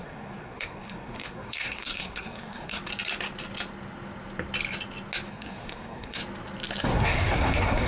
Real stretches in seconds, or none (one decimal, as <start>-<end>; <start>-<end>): 2.8-5.3; 6.2-6.8